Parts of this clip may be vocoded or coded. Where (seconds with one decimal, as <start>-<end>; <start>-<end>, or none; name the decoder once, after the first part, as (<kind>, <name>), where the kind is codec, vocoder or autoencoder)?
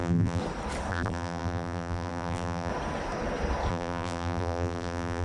0.0-0.4 (vocoder, BigVGAN v2); 0.9-2.7; 3.7-5.2